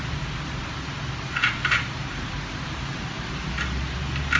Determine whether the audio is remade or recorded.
recorded